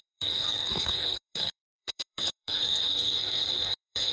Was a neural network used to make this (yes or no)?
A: yes